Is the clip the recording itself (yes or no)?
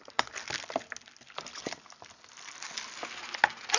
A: yes